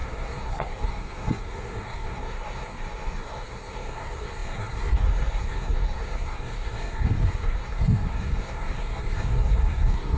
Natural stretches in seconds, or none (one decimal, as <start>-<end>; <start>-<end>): none